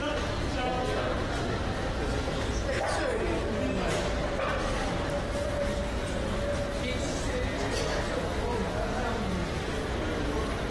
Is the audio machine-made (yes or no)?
no